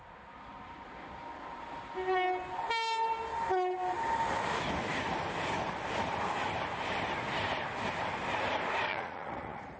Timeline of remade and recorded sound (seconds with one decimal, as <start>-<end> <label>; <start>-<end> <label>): 0.0-8.9 recorded; 8.9-9.8 remade